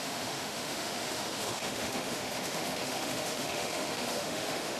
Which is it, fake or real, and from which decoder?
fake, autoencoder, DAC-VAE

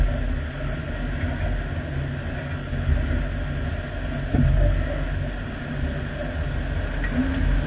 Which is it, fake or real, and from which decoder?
real